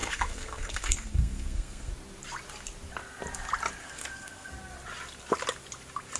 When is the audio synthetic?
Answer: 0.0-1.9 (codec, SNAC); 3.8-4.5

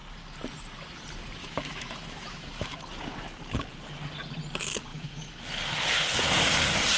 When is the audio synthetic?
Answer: 1.4-2.8 (autoencoder, DAC-VAE); 4.9-5.4

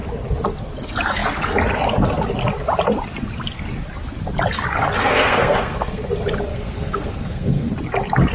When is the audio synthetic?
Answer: 5.0-6.0 (codec, SNAC); 6.5-7.7

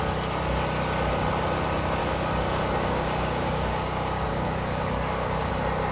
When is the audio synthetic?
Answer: 2.0-5.5 (codec, DAC)